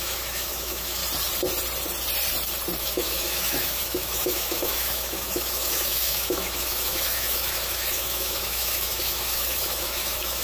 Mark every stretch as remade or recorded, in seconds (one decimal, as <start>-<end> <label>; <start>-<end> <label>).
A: 0.0-1.0 remade; 1.0-2.8 recorded; 2.8-10.4 remade